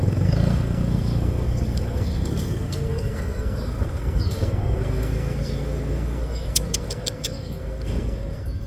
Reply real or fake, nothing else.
fake